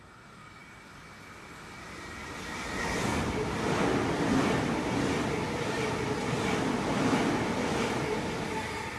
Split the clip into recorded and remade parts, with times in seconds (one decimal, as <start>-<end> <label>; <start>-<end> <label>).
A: 0.0-9.0 recorded